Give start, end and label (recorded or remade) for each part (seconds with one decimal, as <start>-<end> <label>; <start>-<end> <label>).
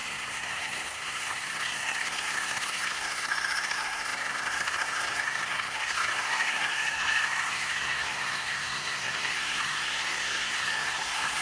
0.0-11.4 remade